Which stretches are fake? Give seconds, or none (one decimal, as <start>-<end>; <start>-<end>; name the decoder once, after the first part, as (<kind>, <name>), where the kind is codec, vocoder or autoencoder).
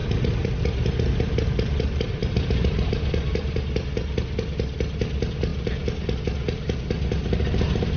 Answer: 2.2-3.6 (vocoder, BigVGAN v2)